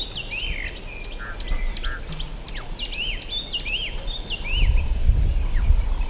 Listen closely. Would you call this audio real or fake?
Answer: real